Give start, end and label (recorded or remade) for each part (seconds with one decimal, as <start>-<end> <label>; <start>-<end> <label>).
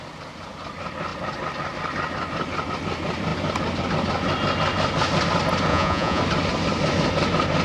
0.0-5.7 recorded; 5.7-6.2 remade; 6.2-7.6 recorded